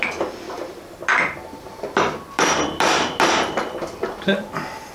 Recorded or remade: remade